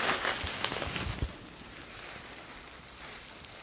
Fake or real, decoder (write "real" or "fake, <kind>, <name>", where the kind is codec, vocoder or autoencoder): real